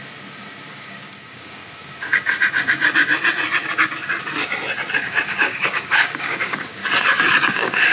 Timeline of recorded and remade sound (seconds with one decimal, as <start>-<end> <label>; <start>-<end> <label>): 0.0-0.7 recorded; 0.7-1.6 remade; 1.6-5.1 recorded; 5.1-6.8 remade; 6.8-7.5 recorded; 7.5-7.9 remade